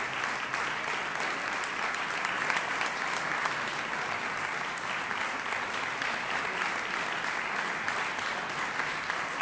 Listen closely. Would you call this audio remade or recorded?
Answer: recorded